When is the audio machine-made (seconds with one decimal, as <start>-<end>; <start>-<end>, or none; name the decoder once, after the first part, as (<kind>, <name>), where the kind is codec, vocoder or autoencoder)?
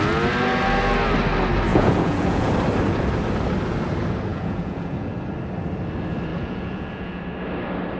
1.7-2.5 (vocoder, Vocos); 4.3-5.1; 6.3-7.2